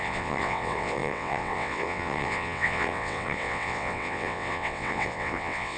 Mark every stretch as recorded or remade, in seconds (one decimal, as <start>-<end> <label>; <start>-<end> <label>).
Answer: 0.0-5.8 remade

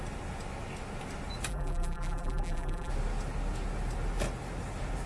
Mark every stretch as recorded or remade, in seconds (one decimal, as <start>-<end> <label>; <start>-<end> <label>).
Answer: 0.0-1.5 recorded; 1.5-2.9 remade; 2.9-5.1 recorded

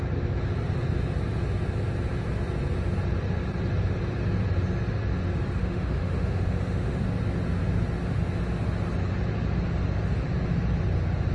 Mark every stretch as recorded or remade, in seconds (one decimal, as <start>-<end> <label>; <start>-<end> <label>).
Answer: 0.0-5.6 recorded; 5.6-7.0 remade; 7.0-11.3 recorded